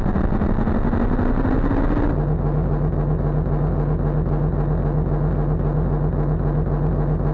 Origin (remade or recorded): recorded